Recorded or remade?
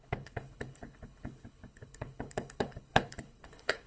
remade